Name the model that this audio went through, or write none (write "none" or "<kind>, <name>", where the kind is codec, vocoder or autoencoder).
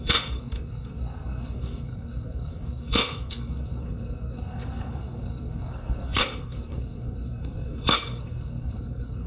codec, SNAC